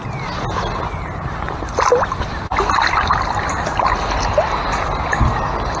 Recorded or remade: recorded